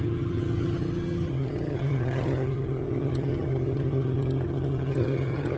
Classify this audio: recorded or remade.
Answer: remade